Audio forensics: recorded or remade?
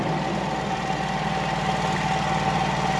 recorded